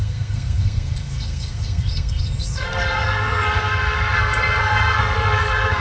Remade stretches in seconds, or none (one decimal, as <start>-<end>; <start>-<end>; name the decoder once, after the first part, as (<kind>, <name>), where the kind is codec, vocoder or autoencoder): 0.0-5.8 (codec, SNAC)